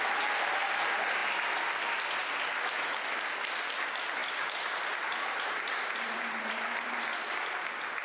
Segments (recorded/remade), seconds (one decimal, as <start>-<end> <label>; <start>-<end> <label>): 0.0-4.2 recorded; 4.2-6.5 remade; 6.5-8.0 recorded